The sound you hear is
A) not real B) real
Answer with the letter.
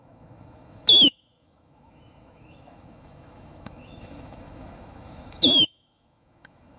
A